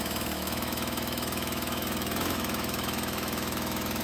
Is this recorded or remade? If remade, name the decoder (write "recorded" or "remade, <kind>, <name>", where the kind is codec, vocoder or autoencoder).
remade, autoencoder, DAC-VAE